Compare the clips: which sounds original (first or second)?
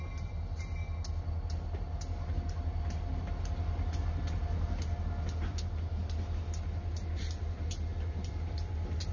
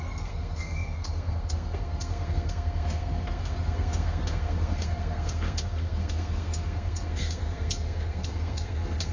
first